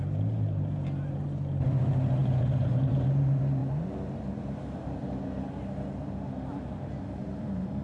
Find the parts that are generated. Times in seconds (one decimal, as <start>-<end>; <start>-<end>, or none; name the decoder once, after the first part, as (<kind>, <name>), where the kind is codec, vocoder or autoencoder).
0.0-3.6 (vocoder, BigVGAN v2); 7.2-7.8